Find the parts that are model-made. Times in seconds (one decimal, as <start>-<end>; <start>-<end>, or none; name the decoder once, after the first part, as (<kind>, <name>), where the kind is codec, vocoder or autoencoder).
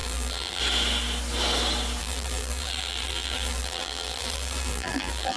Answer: 0.0-0.6 (vocoder, BigVGAN v2); 2.0-5.4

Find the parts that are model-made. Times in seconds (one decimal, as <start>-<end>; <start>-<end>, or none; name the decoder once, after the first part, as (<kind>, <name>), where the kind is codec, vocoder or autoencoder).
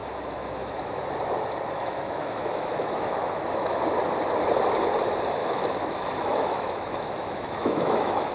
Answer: 0.0-1.0 (autoencoder, DAC-VAE); 1.8-3.8; 5.4-8.3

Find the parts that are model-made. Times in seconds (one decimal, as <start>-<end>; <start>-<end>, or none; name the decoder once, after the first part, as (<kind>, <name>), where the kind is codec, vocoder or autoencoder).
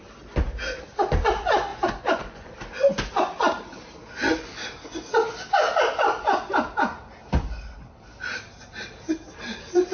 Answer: 1.7-2.5 (vocoder, Vocos)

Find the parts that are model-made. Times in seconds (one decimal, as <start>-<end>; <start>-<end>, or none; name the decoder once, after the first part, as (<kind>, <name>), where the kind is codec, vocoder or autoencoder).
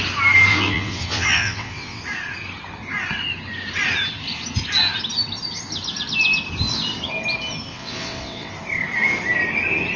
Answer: 0.5-2.0 (vocoder, WaveNeXt); 7.7-8.5